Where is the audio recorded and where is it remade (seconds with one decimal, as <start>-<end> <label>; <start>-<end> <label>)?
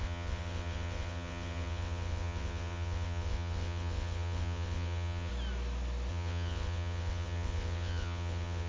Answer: 0.0-5.3 remade; 5.3-6.1 recorded; 6.1-8.7 remade